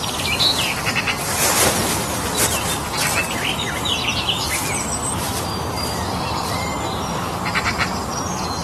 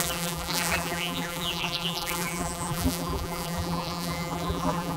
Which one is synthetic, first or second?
second